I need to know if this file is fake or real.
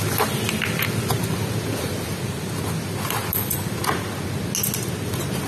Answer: real